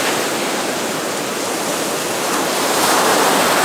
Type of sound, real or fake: real